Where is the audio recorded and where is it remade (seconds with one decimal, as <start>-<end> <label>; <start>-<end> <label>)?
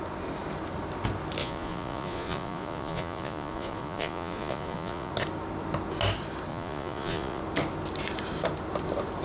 0.0-1.4 recorded; 1.4-5.1 remade; 5.1-6.5 recorded; 6.5-7.4 remade; 7.4-9.2 recorded